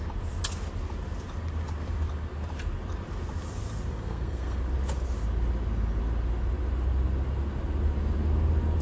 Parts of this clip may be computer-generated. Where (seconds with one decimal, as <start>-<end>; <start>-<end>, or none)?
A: 3.9-4.6